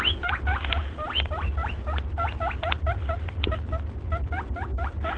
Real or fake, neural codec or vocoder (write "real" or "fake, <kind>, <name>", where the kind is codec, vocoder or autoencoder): real